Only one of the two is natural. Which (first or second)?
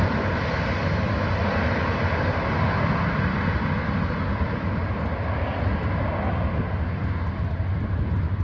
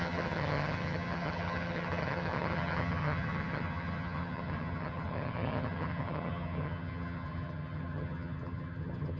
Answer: first